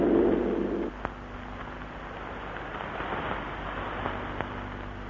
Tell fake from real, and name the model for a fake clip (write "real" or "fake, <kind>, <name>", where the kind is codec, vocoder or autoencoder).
real